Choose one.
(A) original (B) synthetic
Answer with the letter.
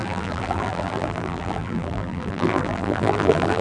B